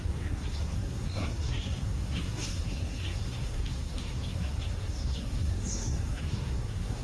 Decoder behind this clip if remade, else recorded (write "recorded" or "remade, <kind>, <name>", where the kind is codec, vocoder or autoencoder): remade, codec, SNAC